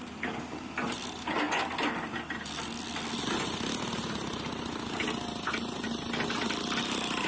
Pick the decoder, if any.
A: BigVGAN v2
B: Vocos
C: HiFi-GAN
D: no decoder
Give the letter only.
D